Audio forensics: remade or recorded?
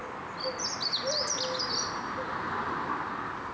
recorded